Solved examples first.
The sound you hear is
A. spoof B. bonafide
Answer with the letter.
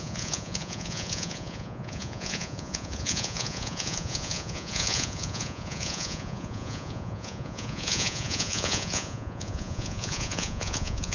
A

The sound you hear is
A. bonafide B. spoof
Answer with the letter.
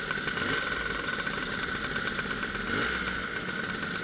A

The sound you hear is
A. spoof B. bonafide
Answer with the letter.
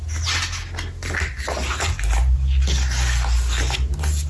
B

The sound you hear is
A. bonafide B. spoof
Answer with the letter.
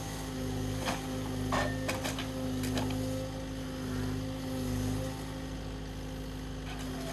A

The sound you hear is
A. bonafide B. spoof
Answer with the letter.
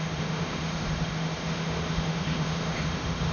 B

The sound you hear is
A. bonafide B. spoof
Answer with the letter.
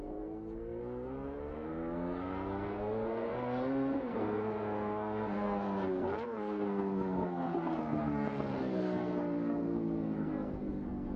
B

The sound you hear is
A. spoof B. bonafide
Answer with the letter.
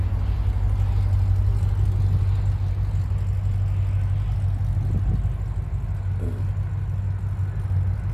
B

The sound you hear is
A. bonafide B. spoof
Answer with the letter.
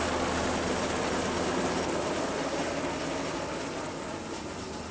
A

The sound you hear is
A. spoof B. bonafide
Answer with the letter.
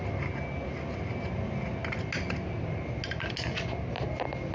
B